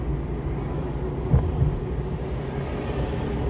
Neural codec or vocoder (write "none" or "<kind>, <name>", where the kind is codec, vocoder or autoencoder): none